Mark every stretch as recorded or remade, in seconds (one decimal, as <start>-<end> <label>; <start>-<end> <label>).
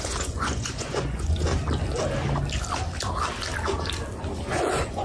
0.0-1.5 remade; 1.5-4.5 recorded; 4.5-5.0 remade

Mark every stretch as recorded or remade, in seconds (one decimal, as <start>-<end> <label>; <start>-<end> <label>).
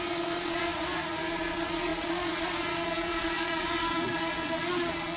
0.0-0.7 remade; 0.7-1.3 recorded; 1.3-5.2 remade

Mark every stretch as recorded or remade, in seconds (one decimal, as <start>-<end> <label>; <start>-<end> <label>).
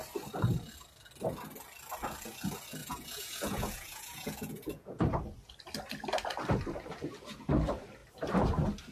0.0-2.8 recorded; 2.8-5.0 remade; 5.0-8.9 recorded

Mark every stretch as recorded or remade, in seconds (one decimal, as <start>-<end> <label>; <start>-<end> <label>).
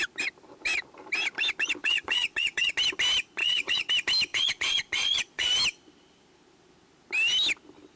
0.0-1.8 recorded; 1.8-2.7 remade; 2.7-3.4 recorded; 3.4-3.9 remade; 3.9-4.3 recorded; 4.3-5.5 remade; 5.5-8.0 recorded